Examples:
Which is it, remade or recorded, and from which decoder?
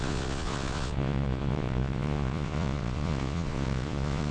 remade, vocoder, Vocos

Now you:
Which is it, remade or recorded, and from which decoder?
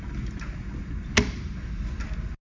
recorded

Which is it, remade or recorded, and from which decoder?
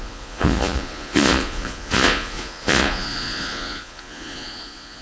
remade, vocoder, Vocos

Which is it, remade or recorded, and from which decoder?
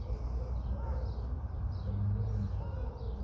recorded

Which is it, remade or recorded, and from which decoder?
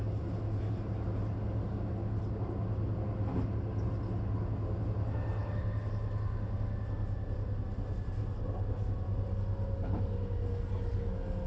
recorded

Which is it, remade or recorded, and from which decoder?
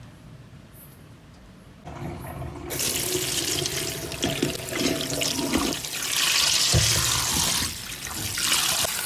recorded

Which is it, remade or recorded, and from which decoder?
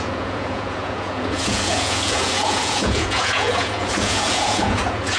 remade, vocoder, Vocos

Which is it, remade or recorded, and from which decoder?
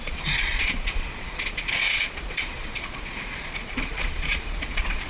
remade, vocoder, Vocos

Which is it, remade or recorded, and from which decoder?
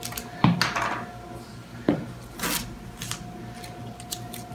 recorded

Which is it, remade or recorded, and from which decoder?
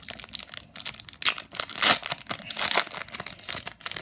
recorded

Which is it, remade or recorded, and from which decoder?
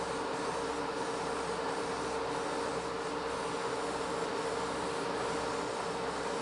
recorded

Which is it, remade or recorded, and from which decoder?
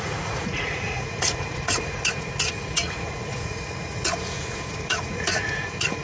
remade, vocoder, Vocos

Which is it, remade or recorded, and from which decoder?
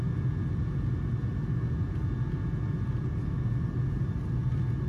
recorded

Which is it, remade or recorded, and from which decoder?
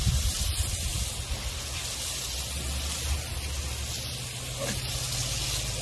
recorded